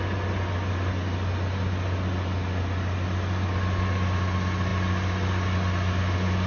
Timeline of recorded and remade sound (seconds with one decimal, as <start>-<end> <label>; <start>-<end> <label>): 0.0-6.5 recorded